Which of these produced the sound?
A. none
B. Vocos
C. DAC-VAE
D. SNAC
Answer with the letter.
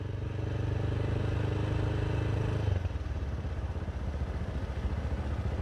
A